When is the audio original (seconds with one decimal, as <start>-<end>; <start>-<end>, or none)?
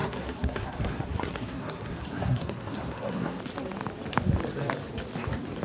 3.4-5.6